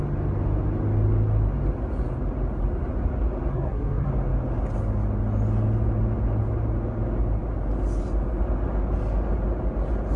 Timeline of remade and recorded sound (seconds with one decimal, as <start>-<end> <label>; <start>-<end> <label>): 0.0-3.5 recorded; 3.5-4.1 remade; 4.1-10.2 recorded